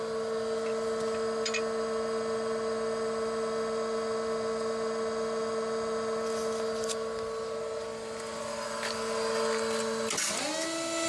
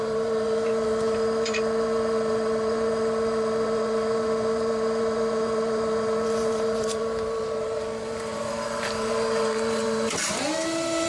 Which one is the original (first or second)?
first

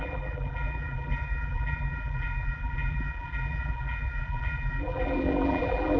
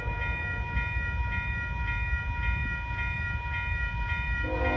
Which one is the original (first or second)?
second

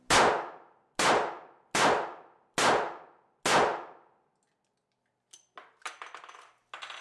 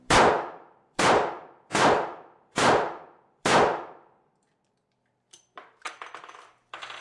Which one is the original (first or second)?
first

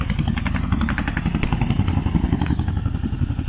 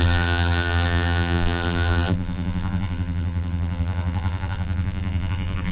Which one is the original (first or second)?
first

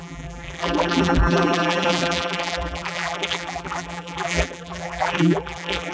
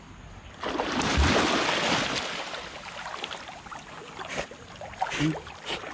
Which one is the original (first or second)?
second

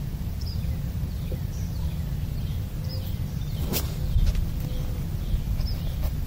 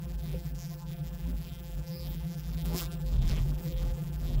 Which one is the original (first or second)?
first